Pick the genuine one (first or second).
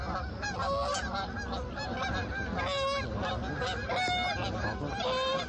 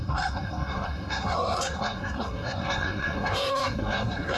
first